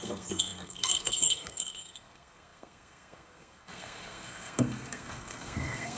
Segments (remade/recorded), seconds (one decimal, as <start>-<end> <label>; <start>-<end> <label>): 0.0-6.0 remade